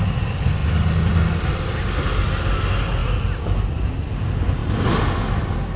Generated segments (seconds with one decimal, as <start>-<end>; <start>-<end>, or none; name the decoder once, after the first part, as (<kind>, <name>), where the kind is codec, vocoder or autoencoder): none